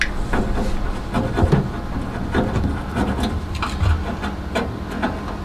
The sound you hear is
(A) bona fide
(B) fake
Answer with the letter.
A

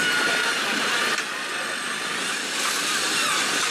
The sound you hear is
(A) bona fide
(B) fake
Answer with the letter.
A